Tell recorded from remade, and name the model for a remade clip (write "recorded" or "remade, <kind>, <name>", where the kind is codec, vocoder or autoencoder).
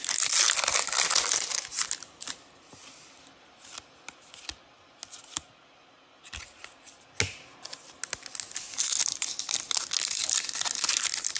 recorded